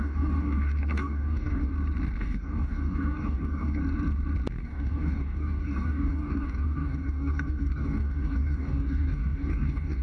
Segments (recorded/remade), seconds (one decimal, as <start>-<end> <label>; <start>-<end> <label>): 0.0-1.7 remade; 1.7-2.2 recorded; 2.2-3.8 remade; 3.8-4.5 recorded; 4.5-10.0 remade